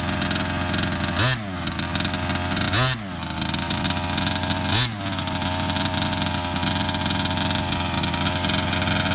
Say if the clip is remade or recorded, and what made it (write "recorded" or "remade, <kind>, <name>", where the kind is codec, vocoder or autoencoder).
recorded